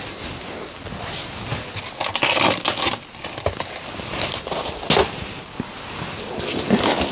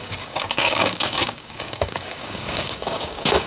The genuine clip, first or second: first